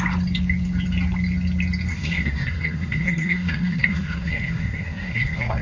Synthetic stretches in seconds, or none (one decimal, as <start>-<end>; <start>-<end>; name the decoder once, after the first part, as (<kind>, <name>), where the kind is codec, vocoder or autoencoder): 1.9-5.6 (codec, SNAC)